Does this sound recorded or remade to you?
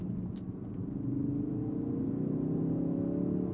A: recorded